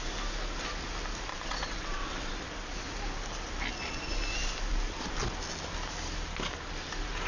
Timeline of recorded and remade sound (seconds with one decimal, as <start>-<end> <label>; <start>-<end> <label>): 0.0-1.3 recorded; 1.3-2.3 remade; 2.3-7.3 recorded